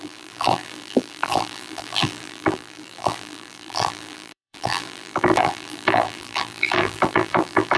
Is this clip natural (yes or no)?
no